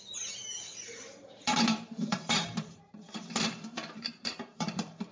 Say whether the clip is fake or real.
fake